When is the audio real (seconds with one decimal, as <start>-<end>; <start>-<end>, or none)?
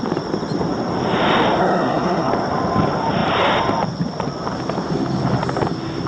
0.0-1.6; 2.3-6.1